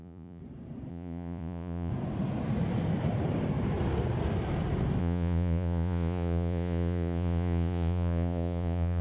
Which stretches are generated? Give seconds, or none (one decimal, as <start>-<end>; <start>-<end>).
0.0-0.4; 0.9-1.9; 5.0-9.0